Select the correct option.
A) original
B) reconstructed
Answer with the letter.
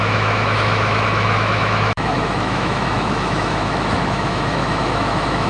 B